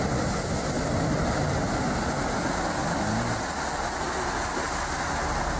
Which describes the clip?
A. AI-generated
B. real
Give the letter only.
B